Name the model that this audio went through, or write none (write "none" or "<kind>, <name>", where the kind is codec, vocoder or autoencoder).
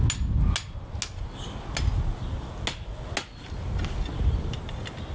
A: none